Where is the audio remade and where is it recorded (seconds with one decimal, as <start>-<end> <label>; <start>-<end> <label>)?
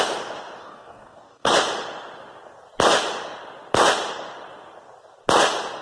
0.0-0.6 recorded; 0.6-1.5 remade; 1.5-5.8 recorded